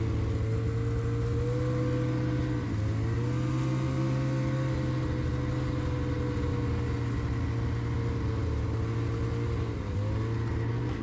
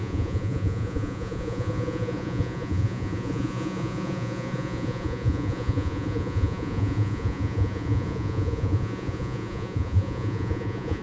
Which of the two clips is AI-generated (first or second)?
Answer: second